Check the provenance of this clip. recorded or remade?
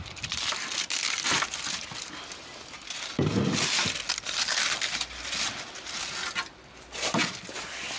recorded